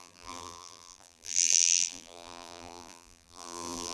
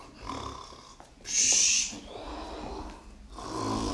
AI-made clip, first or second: first